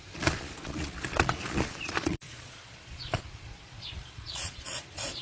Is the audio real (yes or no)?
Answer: no